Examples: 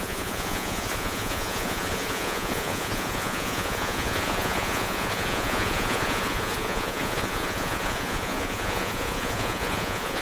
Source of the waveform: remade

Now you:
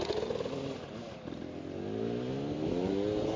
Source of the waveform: recorded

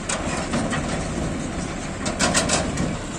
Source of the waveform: recorded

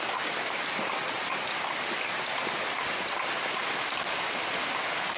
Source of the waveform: recorded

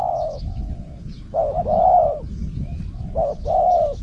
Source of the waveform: remade